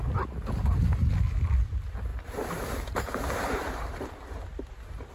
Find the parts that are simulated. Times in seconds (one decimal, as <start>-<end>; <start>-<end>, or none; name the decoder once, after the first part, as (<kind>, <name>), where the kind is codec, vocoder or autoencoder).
2.1-5.1 (vocoder, BigVGAN v2)

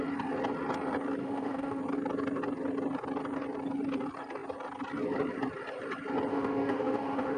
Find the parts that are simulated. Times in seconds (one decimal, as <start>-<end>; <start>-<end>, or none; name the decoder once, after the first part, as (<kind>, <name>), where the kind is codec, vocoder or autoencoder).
1.2-1.8 (autoencoder, DAC-VAE); 6.3-7.4

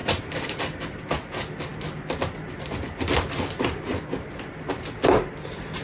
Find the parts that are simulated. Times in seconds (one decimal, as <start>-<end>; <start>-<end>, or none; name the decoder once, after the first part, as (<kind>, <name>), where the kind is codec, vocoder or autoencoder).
0.0-0.6 (vocoder, BigVGAN v2)

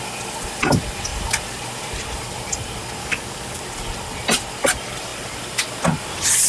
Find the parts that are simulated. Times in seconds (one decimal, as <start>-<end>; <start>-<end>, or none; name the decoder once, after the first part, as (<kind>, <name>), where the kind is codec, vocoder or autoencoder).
3.0-3.6 (codec, DAC)

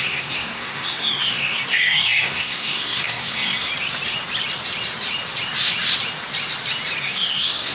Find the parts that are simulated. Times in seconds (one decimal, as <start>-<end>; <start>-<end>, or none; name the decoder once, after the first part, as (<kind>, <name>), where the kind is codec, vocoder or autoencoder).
0.0-3.7 (codec, SNAC); 7.0-7.7

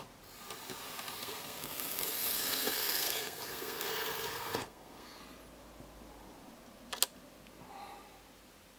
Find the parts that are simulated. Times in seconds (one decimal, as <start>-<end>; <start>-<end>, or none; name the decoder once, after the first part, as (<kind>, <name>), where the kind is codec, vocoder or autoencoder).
1.2-5.2 (codec, SNAC)

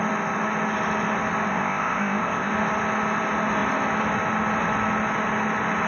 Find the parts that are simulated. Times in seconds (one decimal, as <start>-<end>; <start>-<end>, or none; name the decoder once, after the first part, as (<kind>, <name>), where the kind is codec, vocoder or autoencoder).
1.5-2.5 (codec, ZipCodec)